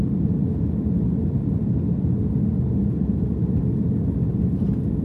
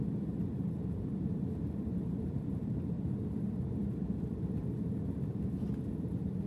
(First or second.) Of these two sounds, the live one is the first